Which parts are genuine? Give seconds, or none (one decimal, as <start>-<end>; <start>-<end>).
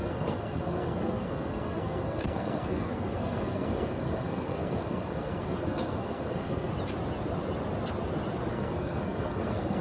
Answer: 6.7-8.5